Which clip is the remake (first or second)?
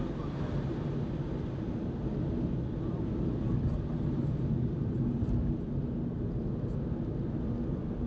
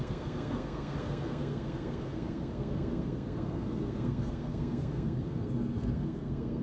second